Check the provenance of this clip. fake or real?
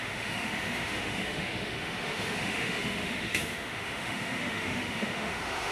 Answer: fake